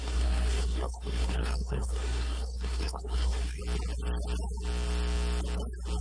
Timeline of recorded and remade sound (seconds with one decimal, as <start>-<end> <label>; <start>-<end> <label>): 0.0-3.6 remade; 3.6-6.0 recorded